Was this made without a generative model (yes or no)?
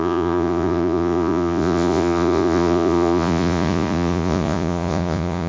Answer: no